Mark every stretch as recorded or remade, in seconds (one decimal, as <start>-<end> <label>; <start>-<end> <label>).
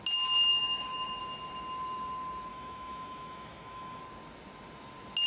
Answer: 0.0-0.5 recorded; 0.5-1.2 remade; 1.2-2.5 recorded; 2.5-4.0 remade; 4.0-5.3 recorded